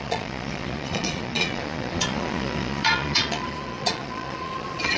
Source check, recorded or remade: remade